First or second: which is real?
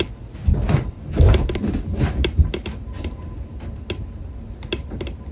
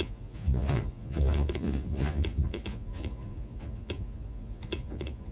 first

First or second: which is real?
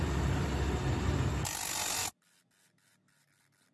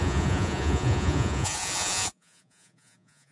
first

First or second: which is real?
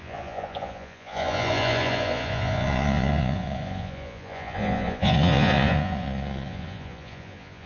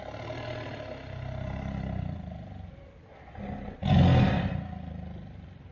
second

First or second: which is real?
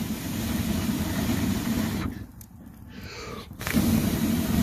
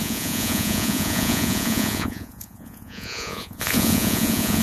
first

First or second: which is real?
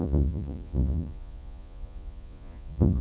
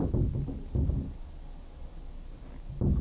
second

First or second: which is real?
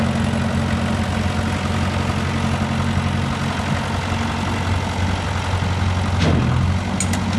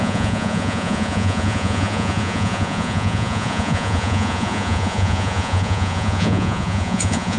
first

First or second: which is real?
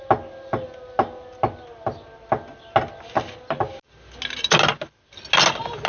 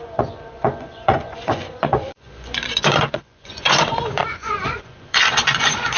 first